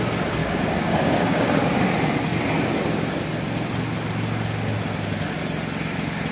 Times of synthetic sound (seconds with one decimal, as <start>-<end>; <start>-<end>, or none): 0.4-1.6